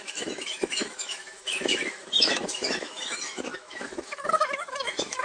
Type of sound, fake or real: fake